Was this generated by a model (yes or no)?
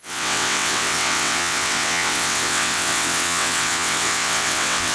yes